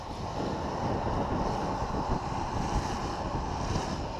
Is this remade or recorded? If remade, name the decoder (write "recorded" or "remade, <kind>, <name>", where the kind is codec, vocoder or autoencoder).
recorded